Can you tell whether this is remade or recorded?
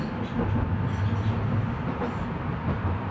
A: recorded